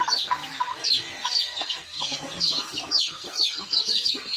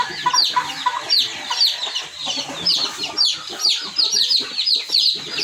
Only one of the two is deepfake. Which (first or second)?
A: first